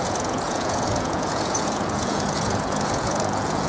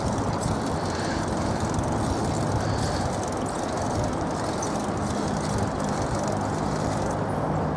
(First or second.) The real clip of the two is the second